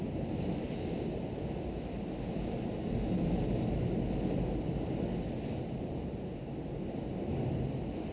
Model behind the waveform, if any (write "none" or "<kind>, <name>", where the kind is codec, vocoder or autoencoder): none